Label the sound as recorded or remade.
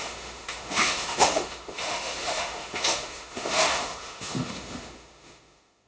remade